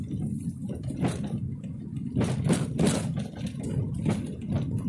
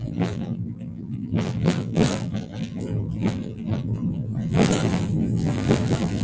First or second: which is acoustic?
first